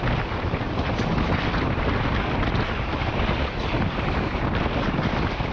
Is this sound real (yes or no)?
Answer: yes